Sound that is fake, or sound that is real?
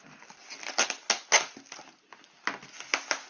real